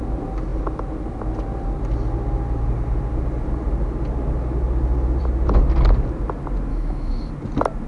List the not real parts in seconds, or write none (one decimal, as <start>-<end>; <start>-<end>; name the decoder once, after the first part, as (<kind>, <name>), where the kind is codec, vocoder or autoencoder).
6.7-7.3 (autoencoder, DAC-VAE)

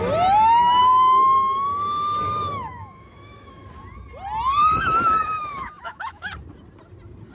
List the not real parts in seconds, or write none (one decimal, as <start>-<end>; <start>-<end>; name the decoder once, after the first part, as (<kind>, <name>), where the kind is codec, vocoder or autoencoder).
0.8-3.6 (autoencoder, DAC-VAE); 4.6-6.3

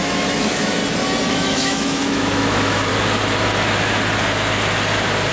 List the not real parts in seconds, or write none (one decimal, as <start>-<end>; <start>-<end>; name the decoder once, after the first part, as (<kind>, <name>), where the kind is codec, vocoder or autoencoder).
0.0-0.8 (autoencoder, DAC-VAE); 1.3-2.9

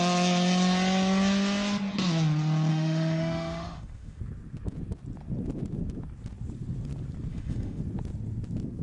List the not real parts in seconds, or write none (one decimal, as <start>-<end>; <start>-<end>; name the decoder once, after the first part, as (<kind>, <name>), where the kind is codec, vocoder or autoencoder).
2.7-4.2 (autoencoder, DAC-VAE); 7.3-7.8

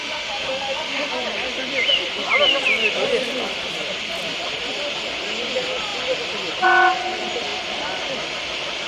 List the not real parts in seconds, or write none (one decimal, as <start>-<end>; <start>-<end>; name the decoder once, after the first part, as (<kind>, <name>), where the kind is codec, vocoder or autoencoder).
0.0-1.1 (autoencoder, DAC-VAE)